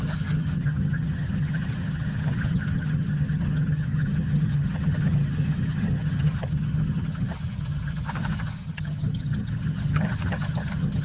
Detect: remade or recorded remade